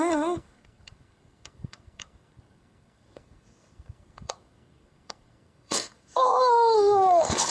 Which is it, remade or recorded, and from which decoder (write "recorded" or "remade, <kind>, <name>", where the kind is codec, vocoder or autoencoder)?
remade, codec, SNAC